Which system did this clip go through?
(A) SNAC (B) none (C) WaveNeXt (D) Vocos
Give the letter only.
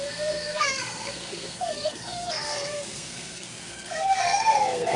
A